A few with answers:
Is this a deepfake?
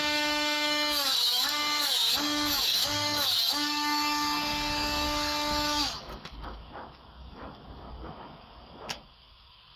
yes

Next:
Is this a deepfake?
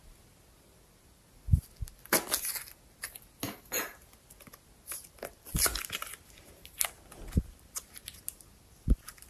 no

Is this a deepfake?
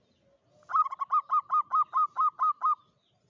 no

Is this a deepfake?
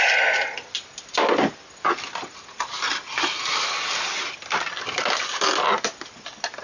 no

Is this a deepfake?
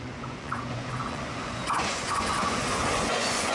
yes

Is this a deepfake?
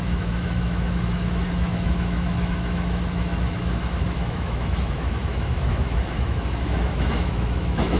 yes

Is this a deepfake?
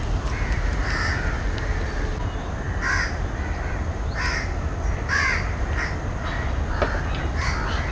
no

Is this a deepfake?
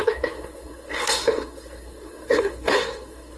yes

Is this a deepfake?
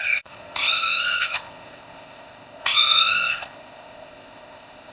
yes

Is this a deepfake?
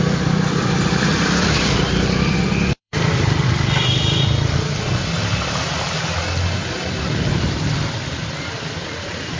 yes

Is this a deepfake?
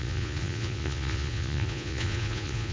yes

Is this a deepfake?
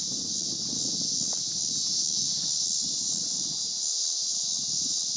no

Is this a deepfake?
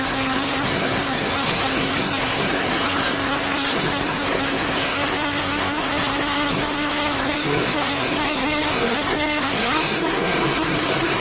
yes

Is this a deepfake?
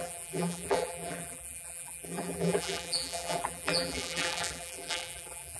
yes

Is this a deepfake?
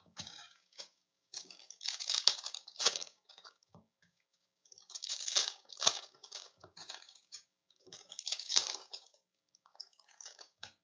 yes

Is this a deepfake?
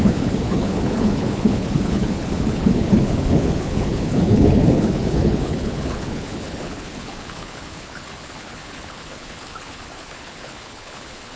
yes